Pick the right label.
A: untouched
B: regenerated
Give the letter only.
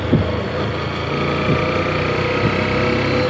A